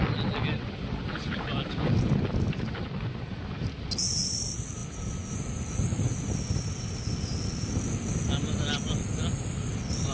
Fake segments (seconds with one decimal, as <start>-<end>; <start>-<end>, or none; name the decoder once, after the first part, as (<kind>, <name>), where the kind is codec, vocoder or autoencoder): none